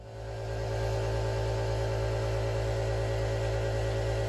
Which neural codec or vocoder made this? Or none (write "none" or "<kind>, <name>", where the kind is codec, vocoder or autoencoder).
none